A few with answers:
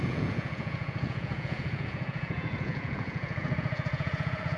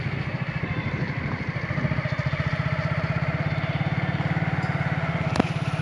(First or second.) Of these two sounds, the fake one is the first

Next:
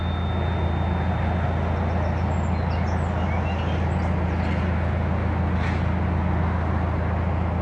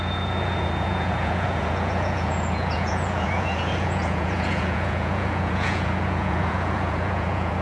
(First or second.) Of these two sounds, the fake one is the second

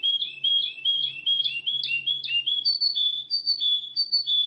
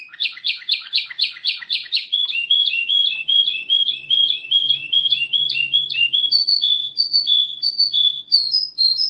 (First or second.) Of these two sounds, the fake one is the second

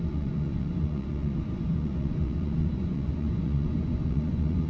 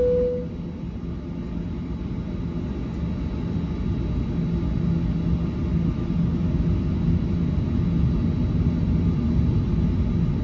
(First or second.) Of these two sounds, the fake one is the first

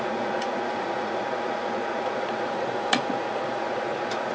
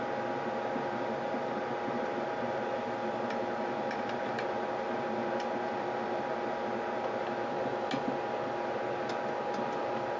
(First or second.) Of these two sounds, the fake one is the first